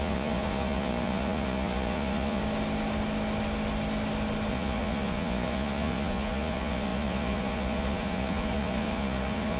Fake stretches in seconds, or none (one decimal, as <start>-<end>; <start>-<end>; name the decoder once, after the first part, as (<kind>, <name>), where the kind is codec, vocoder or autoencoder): 0.0-2.4 (vocoder, Vocos); 4.5-9.6